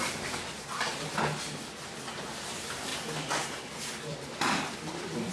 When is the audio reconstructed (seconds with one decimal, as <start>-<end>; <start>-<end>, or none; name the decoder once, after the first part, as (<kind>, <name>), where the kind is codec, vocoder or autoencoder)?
2.9-5.3 (vocoder, BigVGAN v2)